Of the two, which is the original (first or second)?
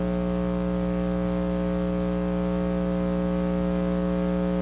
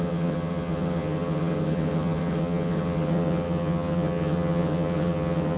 first